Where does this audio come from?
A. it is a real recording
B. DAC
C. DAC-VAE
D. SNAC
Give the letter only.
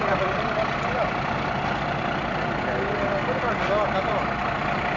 A